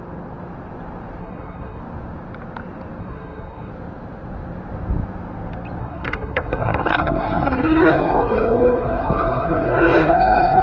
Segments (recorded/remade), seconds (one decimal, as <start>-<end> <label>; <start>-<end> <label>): 0.0-1.2 recorded; 1.2-1.8 remade; 1.8-3.0 recorded; 3.0-3.7 remade; 3.7-5.8 recorded; 5.8-10.6 remade